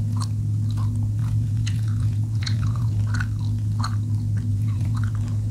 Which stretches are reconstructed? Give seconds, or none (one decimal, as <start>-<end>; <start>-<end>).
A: 1.2-2.9; 4.5-5.1